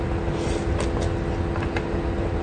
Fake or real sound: real